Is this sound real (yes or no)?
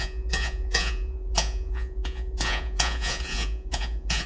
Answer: no